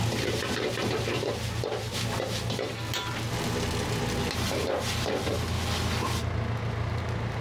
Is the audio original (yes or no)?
yes